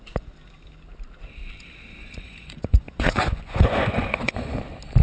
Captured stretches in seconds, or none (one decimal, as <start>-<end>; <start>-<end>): 0.0-2.0; 4.6-5.0